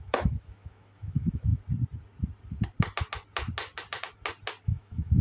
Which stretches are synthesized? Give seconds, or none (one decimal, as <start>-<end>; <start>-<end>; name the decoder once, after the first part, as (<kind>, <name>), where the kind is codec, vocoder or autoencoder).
0.0-1.5 (autoencoder, DAC-VAE); 4.6-5.2